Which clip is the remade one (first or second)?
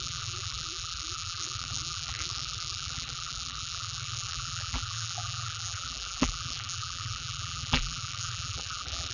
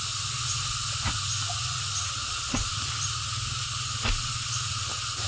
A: first